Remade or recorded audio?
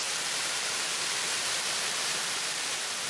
remade